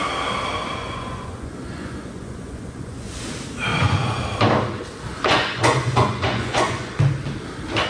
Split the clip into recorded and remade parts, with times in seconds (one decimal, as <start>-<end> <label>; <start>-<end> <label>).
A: 0.0-0.8 recorded; 0.8-3.2 remade; 3.2-3.7 recorded; 3.7-4.2 remade; 4.2-5.1 recorded; 5.1-6.9 remade; 6.9-7.9 recorded